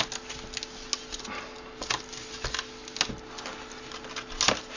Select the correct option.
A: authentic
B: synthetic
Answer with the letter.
A